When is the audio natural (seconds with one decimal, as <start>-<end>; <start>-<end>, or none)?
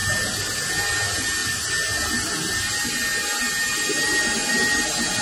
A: 0.0-5.2